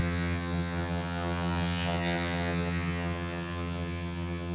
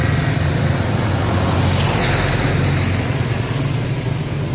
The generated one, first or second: first